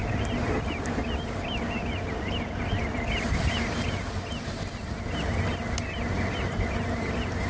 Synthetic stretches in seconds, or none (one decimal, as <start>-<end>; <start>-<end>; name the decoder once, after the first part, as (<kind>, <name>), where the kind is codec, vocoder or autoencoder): 0.0-0.9 (vocoder, BigVGAN v2); 2.8-3.6